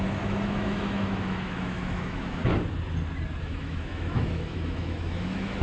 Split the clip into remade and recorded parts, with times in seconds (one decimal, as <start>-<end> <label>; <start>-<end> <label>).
0.0-2.4 remade; 2.4-3.4 recorded; 3.4-5.6 remade